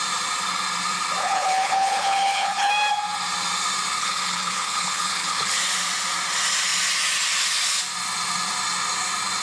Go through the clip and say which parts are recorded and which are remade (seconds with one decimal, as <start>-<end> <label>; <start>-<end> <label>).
0.0-1.2 recorded; 1.2-2.7 remade; 2.7-4.0 recorded; 4.0-5.6 remade; 5.6-9.4 recorded